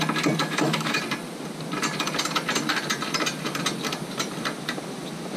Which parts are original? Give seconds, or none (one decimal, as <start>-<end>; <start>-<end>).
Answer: 0.0-0.4; 1.0-5.4